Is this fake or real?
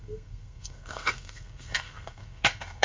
fake